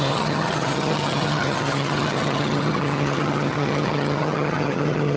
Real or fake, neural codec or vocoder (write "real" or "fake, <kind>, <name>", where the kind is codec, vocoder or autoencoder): fake, vocoder, HiFi-GAN